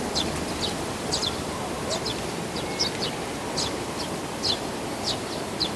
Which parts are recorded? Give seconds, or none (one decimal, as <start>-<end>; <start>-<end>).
0.0-5.8

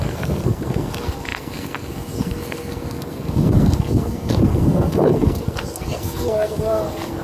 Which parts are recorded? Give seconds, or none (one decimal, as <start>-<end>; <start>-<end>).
none